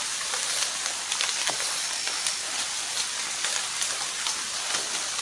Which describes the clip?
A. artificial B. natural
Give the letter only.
B